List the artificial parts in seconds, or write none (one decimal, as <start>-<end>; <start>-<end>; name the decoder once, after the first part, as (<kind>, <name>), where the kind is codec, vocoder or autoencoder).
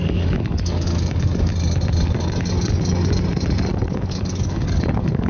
0.0-1.5 (codec, DAC); 3.9-5.3